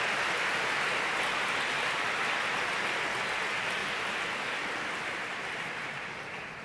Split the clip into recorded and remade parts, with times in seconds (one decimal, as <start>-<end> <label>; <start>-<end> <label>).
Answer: 0.0-3.8 recorded; 3.8-4.7 remade; 4.7-6.6 recorded